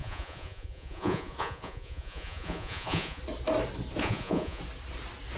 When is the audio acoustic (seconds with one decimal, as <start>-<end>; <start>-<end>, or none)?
3.2-4.0; 4.6-5.4